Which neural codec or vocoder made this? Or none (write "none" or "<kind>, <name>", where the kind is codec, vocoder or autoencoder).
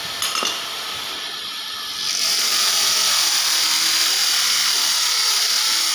none